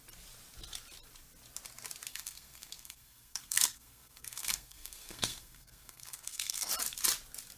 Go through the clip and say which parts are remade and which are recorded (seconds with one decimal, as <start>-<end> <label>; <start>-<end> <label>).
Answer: 0.0-2.1 recorded; 2.1-6.7 remade; 6.7-7.6 recorded